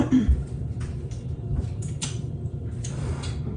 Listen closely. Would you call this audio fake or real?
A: fake